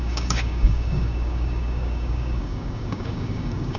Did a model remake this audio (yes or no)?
yes